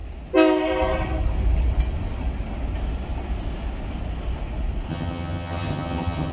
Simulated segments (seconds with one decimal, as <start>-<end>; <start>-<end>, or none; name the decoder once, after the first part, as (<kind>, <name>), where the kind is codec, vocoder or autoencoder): 4.9-6.3 (vocoder, HiFi-GAN)